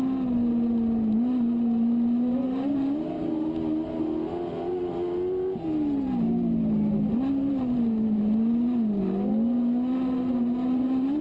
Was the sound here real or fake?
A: real